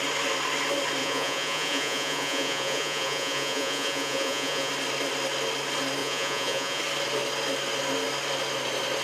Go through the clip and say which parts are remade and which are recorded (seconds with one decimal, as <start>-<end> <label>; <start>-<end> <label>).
0.0-1.0 recorded; 1.0-4.7 remade; 4.7-6.0 recorded; 6.0-6.8 remade; 6.8-9.0 recorded